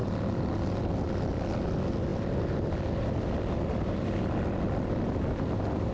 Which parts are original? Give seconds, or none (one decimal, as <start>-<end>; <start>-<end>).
0.0-5.9

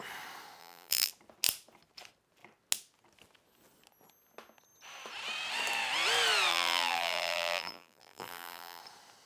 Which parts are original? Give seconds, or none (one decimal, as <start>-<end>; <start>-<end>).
0.0-0.6; 1.1-6.5; 8.8-9.3

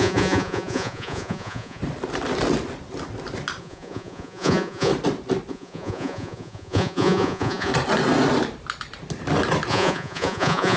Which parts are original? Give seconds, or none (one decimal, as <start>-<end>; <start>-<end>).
1.8-3.6; 4.9-5.5; 7.7-9.7

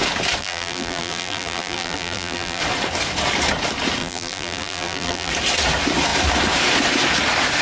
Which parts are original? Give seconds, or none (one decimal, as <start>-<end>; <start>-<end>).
0.0-0.4; 2.6-4.0; 5.3-7.6

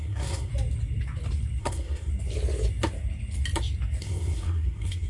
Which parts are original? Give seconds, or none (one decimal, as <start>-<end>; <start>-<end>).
0.5-1.6; 2.1-4.0

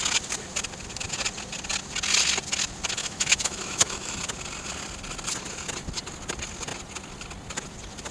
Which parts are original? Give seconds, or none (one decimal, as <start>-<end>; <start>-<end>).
0.0-3.0; 4.1-8.1

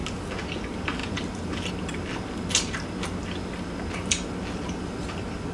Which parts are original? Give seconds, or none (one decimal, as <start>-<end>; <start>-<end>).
0.0-1.0; 1.7-5.5

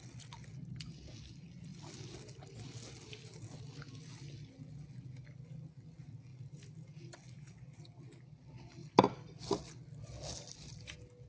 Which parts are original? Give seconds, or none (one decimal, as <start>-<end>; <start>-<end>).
0.0-11.3